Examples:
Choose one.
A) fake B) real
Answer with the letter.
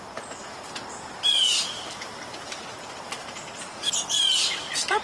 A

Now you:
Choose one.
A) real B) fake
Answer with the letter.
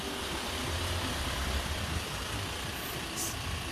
B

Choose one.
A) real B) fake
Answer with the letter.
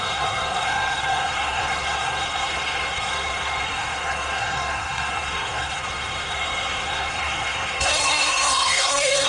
B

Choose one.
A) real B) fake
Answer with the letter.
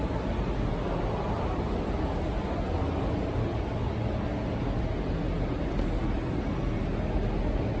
A